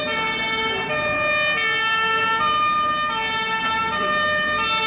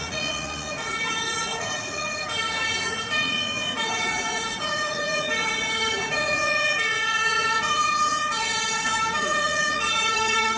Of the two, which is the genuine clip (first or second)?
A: first